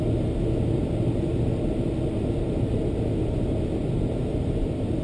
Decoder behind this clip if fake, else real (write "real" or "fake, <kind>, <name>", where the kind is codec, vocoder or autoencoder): real